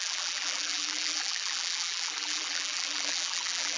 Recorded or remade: remade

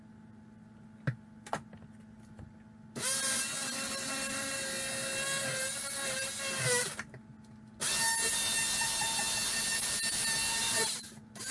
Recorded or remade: recorded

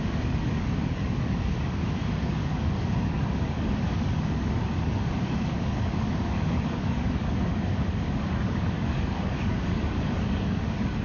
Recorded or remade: remade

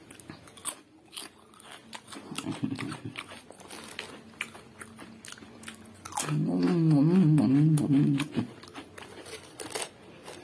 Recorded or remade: recorded